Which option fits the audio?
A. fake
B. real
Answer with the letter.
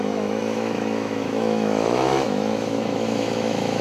A